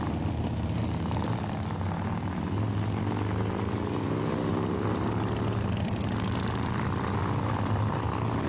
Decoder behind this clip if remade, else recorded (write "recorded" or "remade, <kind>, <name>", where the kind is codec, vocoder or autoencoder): recorded